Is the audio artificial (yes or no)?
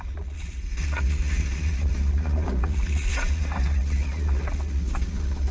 yes